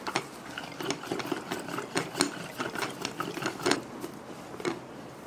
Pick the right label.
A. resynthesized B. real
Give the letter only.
B